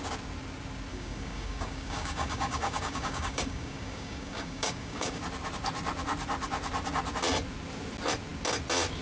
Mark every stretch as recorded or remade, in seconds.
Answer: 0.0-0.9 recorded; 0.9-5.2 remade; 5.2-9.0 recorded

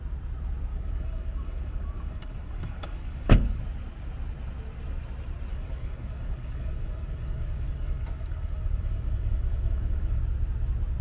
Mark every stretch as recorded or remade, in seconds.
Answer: 0.0-0.7 recorded; 0.7-3.6 remade; 3.6-5.5 recorded; 5.5-10.2 remade; 10.2-11.0 recorded

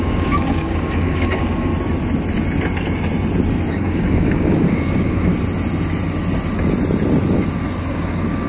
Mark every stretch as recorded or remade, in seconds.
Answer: 0.0-1.7 remade; 1.7-3.7 recorded; 3.7-5.3 remade; 5.3-7.9 recorded; 7.9-8.5 remade

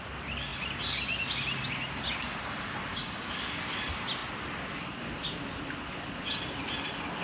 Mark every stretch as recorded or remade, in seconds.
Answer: 0.0-2.9 recorded; 2.9-3.5 remade; 3.5-7.2 recorded

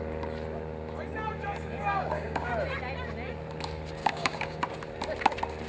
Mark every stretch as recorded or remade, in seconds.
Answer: 0.0-1.8 recorded; 1.8-2.5 remade; 2.5-4.0 recorded; 4.0-4.6 remade; 4.6-5.7 recorded